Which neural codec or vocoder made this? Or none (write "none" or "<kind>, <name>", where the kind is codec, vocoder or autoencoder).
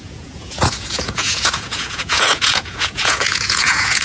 vocoder, Vocos